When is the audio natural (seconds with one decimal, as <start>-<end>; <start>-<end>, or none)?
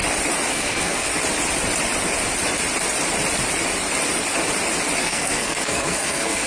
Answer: 0.0-0.5; 1.1-5.0